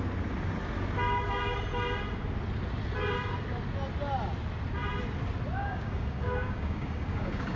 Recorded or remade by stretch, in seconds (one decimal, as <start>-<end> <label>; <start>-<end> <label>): 0.0-5.6 recorded; 5.6-7.6 remade